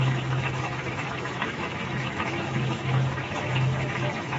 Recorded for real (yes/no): no